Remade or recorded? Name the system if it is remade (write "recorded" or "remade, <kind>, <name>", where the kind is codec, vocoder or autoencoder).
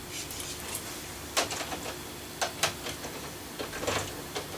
recorded